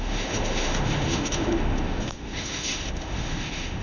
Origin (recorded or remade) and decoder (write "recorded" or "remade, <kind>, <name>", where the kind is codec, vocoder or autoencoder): remade, autoencoder, DAC-VAE